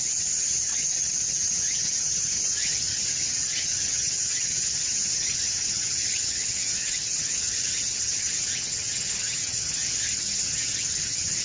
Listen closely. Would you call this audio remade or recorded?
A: remade